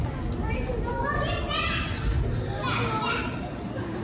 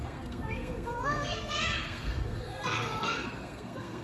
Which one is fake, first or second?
second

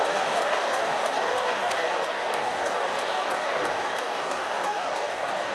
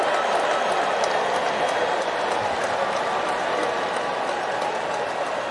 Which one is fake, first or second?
first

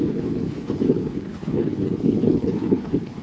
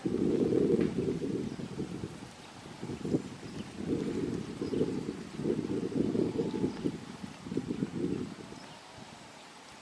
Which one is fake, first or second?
first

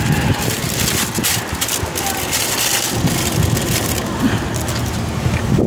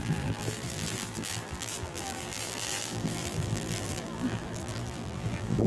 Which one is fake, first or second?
second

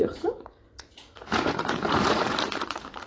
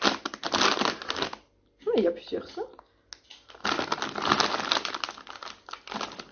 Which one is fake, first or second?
first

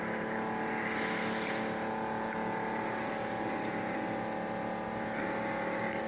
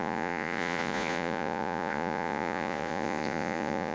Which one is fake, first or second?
second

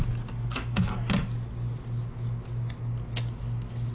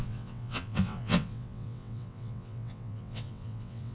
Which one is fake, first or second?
second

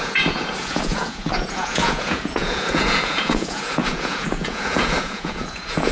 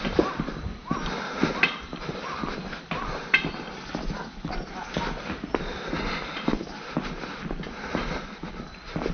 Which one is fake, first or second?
first